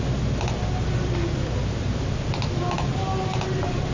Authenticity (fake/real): real